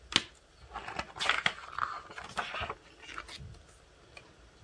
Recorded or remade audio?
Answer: recorded